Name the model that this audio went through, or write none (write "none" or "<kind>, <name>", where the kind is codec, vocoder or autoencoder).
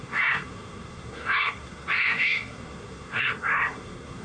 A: codec, SNAC